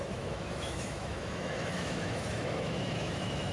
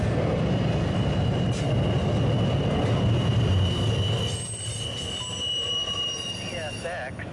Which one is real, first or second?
second